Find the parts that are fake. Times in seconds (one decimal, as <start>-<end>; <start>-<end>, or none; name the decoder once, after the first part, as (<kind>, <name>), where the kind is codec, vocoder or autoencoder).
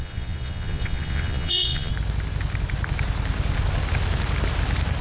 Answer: 0.0-1.9 (vocoder, Vocos)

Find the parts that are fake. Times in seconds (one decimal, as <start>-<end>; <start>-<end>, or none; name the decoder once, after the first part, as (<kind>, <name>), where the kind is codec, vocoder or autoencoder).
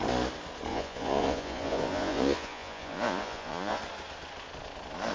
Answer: 0.7-3.8 (vocoder, Vocos)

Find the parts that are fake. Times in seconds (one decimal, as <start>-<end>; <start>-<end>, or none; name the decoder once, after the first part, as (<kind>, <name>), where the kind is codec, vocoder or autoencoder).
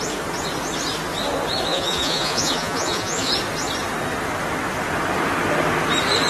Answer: 1.7-3.3 (vocoder, Vocos)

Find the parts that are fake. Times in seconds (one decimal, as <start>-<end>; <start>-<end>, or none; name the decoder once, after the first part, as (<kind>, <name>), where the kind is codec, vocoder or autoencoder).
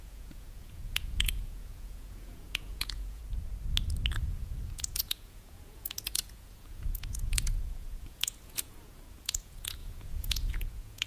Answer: 0.0-3.2 (vocoder, Vocos); 4.1-11.1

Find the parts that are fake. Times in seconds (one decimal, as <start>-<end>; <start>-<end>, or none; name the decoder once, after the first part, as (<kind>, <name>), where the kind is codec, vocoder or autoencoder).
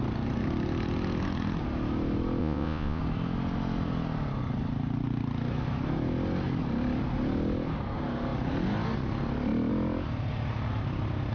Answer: 2.4-3.0 (vocoder, Vocos)